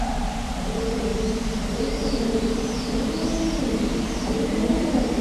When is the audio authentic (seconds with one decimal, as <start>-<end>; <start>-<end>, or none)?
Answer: 1.1-1.8